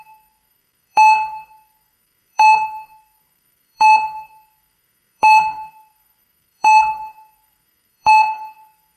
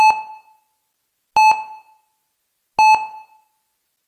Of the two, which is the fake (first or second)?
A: first